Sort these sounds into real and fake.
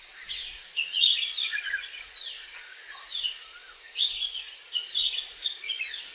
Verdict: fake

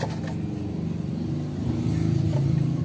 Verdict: real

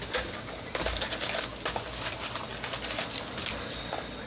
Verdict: real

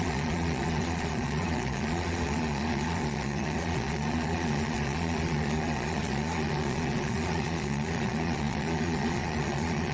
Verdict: fake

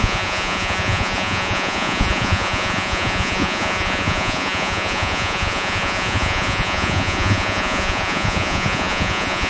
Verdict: fake